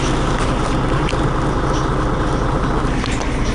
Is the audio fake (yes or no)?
no